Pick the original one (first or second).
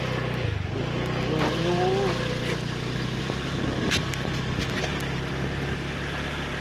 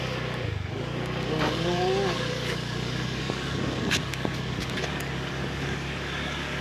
first